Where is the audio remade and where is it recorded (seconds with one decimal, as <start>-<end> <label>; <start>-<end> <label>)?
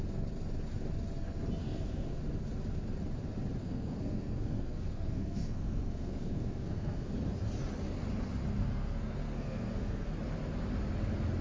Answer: 0.0-1.6 recorded; 1.6-2.2 remade; 2.2-3.6 recorded; 3.6-7.1 remade; 7.1-8.6 recorded; 8.6-10.1 remade; 10.1-11.4 recorded